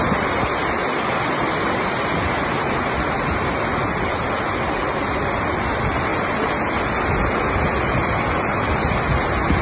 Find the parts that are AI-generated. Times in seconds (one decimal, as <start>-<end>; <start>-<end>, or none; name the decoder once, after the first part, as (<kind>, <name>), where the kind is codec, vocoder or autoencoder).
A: none